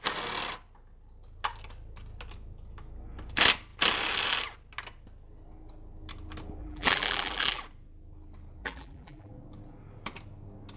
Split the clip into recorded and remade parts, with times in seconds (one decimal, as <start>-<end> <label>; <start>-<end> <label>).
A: 0.0-6.6 recorded; 6.6-7.6 remade; 7.6-8.6 recorded; 8.6-9.3 remade; 9.3-10.8 recorded